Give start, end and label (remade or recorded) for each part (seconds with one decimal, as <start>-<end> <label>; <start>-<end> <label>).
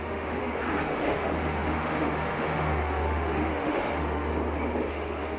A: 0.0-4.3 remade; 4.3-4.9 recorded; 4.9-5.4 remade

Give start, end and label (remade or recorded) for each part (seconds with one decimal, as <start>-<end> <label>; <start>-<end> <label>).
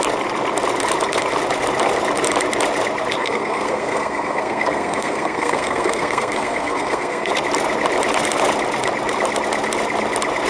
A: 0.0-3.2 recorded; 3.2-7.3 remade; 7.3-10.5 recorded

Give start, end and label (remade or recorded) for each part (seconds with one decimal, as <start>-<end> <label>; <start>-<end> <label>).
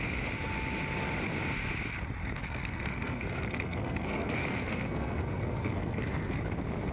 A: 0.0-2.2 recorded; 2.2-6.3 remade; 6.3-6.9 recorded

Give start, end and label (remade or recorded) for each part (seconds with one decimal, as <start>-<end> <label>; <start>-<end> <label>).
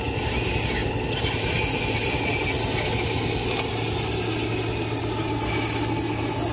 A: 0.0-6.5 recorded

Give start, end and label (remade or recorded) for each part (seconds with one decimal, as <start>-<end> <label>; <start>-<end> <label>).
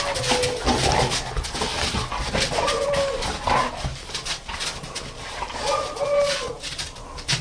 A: 0.0-7.4 recorded